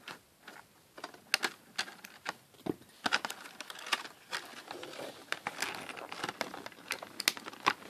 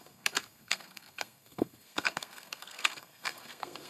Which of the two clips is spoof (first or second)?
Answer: second